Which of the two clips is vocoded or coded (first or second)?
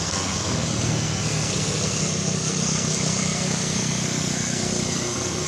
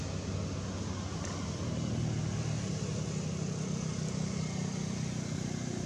first